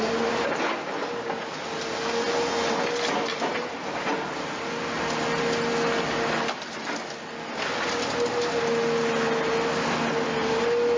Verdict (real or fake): real